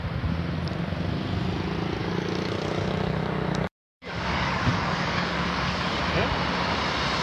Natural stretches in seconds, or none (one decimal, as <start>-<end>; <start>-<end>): 0.0-2.0; 6.0-7.2